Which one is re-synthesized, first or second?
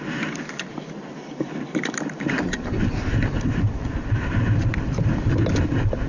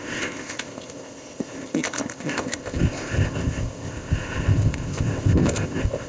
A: second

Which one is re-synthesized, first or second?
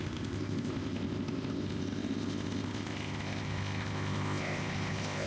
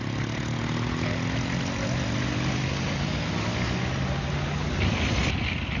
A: first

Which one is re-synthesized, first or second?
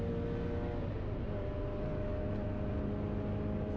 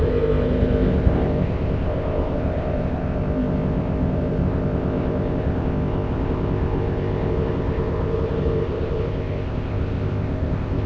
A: second